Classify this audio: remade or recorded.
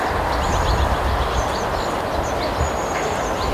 recorded